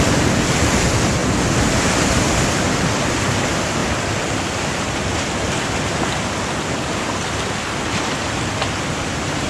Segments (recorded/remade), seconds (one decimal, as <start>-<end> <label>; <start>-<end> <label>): 0.0-9.5 recorded